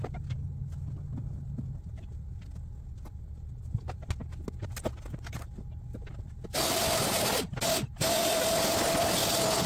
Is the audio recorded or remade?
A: recorded